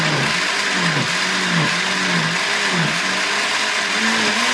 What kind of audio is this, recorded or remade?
recorded